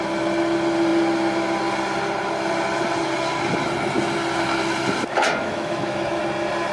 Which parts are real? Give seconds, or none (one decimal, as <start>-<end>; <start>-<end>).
0.0-5.4; 6.2-6.7